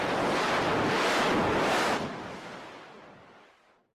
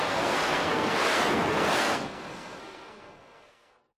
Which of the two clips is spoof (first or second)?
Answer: second